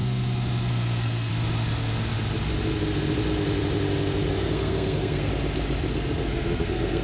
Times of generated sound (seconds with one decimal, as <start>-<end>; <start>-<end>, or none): 0.7-1.3; 4.3-5.3; 5.9-7.0